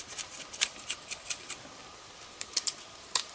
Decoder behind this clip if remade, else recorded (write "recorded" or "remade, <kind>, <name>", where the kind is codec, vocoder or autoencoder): remade, vocoder, BigVGAN v2